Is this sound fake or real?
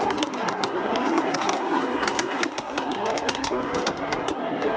fake